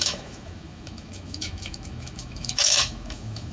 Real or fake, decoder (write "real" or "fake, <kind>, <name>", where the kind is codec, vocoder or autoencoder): fake, autoencoder, DAC-VAE